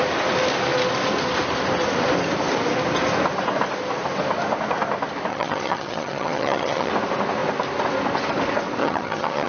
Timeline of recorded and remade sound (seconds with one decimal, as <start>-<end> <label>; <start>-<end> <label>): 0.0-5.3 recorded; 5.3-6.9 remade; 6.9-8.8 recorded; 8.8-9.5 remade